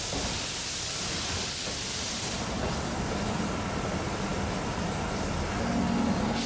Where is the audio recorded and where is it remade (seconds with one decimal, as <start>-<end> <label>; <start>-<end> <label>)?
0.0-6.5 recorded